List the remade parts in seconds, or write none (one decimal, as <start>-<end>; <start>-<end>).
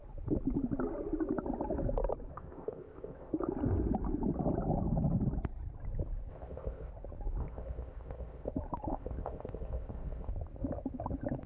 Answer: 2.3-3.3; 6.3-6.9; 7.4-8.5; 8.9-10.3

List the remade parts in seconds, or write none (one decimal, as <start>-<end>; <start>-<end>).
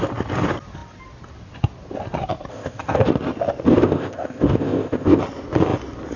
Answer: 2.5-3.1; 3.7-5.2